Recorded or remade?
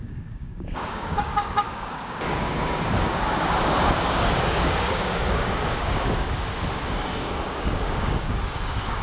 remade